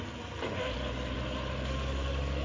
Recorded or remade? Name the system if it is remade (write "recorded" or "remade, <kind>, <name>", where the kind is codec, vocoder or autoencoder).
recorded